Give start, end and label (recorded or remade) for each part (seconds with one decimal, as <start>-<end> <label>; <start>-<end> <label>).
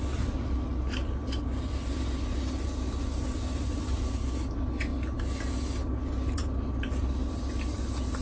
0.0-8.2 recorded